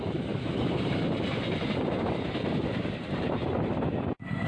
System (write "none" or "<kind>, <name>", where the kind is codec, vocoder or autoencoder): vocoder, BigVGAN v2